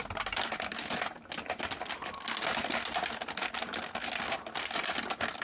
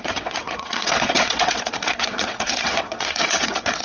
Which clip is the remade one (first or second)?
second